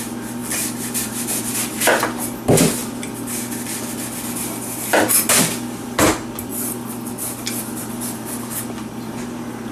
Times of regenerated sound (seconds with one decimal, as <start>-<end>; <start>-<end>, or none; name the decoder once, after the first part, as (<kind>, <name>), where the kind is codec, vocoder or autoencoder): none